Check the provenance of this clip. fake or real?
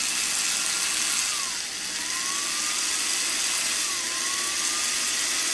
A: real